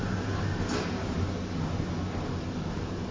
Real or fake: real